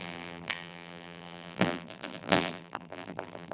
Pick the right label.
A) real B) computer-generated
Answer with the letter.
B